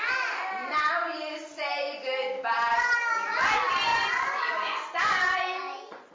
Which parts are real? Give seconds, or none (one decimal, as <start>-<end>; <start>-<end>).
0.0-3.9

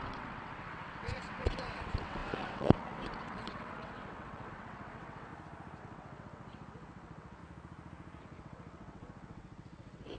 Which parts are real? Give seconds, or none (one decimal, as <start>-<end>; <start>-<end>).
5.3-5.8; 7.4-8.2

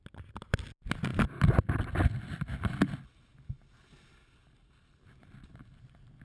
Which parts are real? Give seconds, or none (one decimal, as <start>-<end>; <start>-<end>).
0.0-6.2

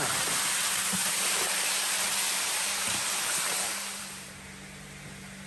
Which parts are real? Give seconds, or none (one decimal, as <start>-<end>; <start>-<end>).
0.0-1.0; 4.3-5.5

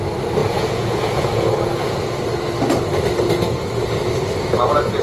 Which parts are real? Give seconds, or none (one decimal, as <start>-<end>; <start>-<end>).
0.0-0.4; 2.0-5.0